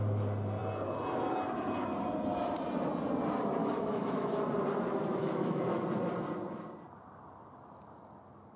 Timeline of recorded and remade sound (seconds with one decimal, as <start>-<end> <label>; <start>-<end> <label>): 0.0-3.6 recorded; 3.6-4.4 remade; 4.4-5.2 recorded; 5.2-5.8 remade; 5.8-8.6 recorded